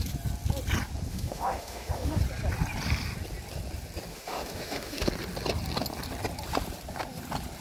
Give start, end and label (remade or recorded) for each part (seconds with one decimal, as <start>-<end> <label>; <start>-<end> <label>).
0.0-1.1 recorded; 1.1-2.2 remade; 2.2-4.1 recorded; 4.1-5.1 remade; 5.1-7.6 recorded